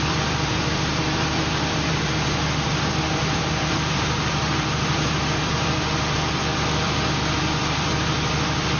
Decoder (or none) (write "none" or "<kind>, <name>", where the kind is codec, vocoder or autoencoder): vocoder, BigVGAN v2